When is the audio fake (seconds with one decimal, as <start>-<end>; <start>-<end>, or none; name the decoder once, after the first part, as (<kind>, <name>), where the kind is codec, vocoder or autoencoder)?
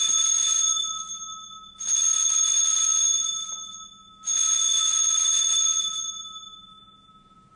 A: none